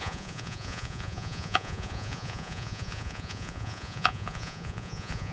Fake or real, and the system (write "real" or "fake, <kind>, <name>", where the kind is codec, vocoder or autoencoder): fake, vocoder, Vocos